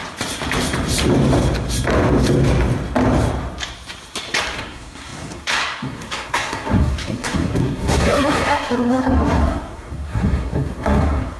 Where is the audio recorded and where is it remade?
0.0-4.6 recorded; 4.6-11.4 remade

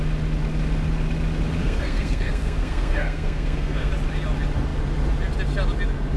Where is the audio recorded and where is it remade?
0.0-1.6 recorded; 1.6-3.9 remade; 3.9-6.2 recorded

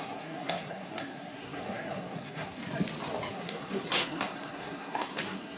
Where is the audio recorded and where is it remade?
0.0-2.6 remade; 2.6-3.3 recorded; 3.3-5.6 remade

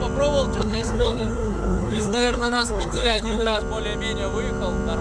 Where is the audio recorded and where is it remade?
0.0-0.6 recorded; 0.6-3.6 remade; 3.6-5.0 recorded

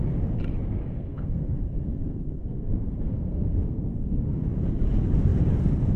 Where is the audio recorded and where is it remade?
0.0-0.8 recorded; 0.8-4.4 remade; 4.4-6.0 recorded

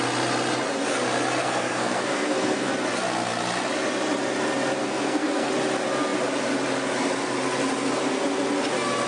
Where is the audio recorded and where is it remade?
0.0-1.4 recorded; 1.4-2.7 remade; 2.7-4.8 recorded; 4.8-5.5 remade; 5.5-9.1 recorded

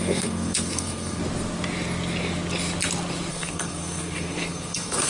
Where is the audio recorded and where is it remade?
0.0-1.2 remade; 1.2-3.3 recorded; 3.3-5.1 remade

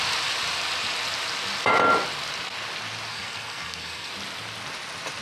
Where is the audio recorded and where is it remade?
0.0-3.1 recorded; 3.1-4.1 remade; 4.1-5.2 recorded